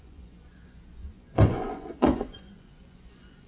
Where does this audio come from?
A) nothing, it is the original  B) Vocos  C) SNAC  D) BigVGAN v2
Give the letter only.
B